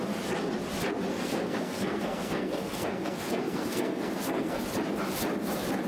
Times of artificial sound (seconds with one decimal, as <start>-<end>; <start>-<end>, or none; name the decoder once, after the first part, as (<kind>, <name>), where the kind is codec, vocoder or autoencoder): 1.1-4.6 (codec, SNAC)